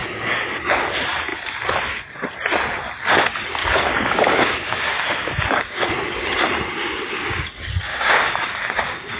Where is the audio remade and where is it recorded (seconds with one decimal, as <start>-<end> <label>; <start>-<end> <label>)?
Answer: 0.0-0.9 remade; 0.9-3.6 recorded; 3.6-5.9 remade; 5.9-7.9 recorded; 7.9-9.2 remade